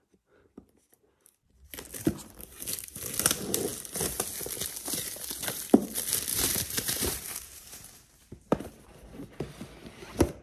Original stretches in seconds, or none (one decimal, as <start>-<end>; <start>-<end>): 0.0-6.3; 9.4-10.4